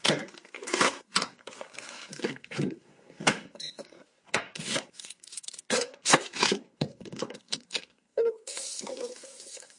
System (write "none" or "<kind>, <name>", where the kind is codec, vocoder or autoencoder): codec, SNAC